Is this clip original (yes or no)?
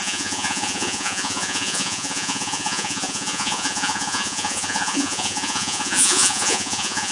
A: no